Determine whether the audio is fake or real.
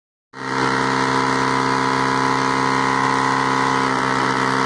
real